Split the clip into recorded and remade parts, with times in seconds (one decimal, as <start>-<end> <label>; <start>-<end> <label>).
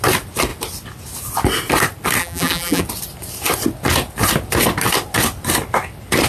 0.0-2.2 recorded; 2.2-2.8 remade; 2.8-6.3 recorded